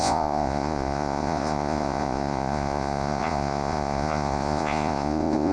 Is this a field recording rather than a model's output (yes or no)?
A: no